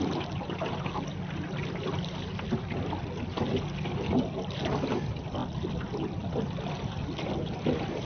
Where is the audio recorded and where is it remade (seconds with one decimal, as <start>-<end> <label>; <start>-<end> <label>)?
0.0-8.1 recorded